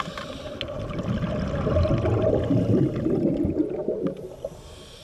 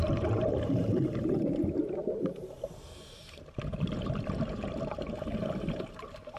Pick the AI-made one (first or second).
second